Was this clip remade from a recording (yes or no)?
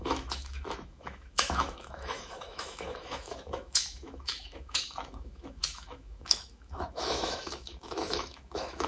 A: yes